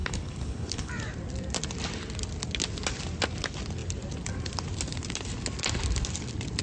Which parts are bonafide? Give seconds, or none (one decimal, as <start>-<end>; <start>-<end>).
0.9-6.6